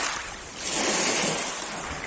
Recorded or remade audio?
recorded